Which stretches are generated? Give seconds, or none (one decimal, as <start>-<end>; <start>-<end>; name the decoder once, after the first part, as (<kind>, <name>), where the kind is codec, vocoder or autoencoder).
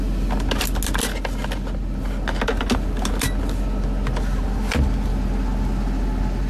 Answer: none